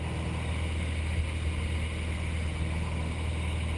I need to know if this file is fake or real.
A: real